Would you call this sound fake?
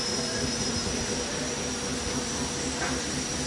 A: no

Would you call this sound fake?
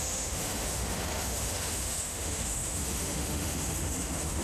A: yes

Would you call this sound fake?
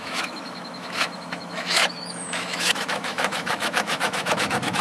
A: yes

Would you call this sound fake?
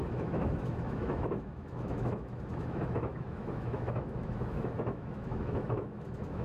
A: yes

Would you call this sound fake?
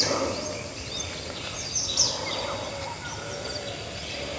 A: no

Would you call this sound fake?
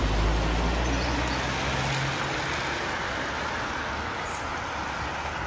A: no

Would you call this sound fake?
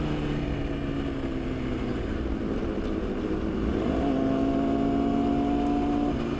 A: no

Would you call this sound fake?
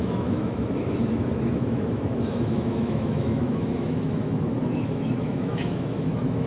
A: yes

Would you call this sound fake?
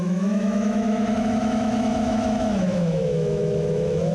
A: yes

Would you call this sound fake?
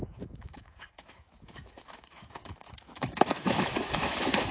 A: yes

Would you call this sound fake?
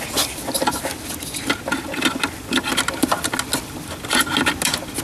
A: no